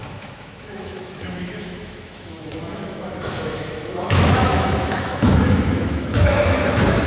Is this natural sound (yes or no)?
no